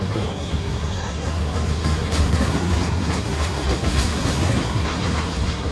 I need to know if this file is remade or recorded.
remade